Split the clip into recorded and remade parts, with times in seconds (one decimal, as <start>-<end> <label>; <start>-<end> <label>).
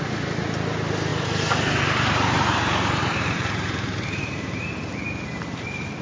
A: 0.0-1.1 recorded; 1.1-4.7 remade; 4.7-6.0 recorded